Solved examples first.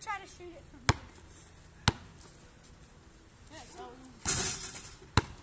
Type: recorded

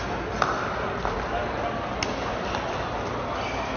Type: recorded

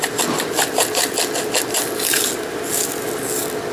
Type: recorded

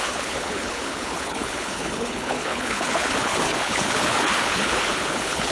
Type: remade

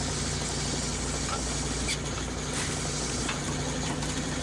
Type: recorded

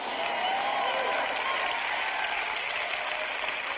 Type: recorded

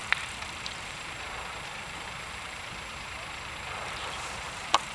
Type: remade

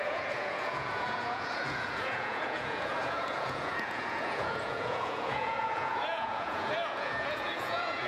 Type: remade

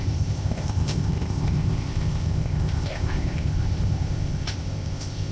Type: remade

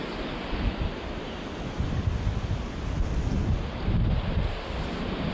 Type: recorded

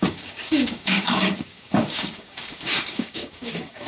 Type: remade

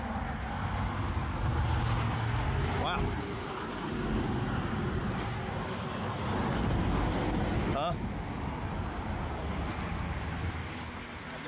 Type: recorded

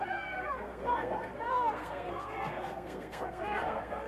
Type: remade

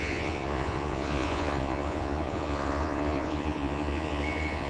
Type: remade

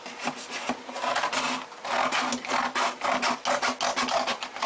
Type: recorded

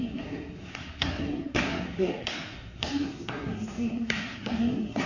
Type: remade